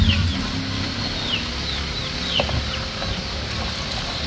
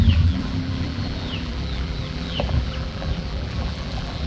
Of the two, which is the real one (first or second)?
first